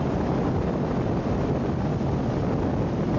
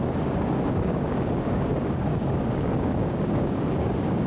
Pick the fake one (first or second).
second